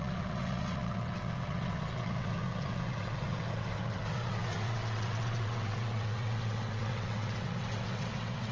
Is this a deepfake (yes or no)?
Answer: yes